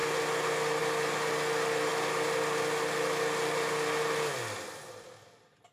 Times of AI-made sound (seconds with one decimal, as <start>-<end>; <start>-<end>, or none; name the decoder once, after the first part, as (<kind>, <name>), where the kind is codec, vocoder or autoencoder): 0.8-1.9 (vocoder, BigVGAN v2); 5.3-5.7